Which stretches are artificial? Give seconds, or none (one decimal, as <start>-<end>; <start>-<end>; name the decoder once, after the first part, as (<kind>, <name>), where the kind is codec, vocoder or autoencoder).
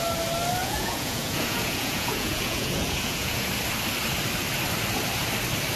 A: 0.6-3.5 (vocoder, Vocos)